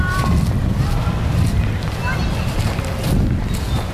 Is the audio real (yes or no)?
yes